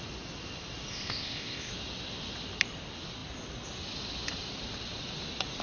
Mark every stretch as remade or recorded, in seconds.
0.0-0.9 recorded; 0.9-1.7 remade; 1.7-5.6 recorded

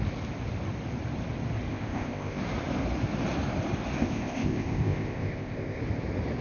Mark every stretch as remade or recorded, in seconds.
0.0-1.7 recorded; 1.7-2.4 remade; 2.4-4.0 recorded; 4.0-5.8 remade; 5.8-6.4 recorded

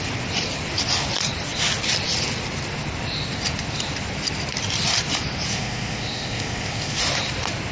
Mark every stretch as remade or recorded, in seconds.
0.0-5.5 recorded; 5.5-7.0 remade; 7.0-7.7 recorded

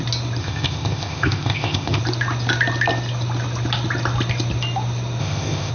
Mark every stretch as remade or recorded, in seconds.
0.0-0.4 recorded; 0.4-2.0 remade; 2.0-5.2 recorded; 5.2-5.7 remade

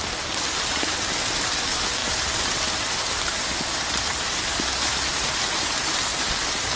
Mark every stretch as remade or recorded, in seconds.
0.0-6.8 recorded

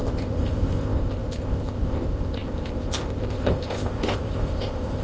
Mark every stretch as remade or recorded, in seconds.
0.0-5.0 remade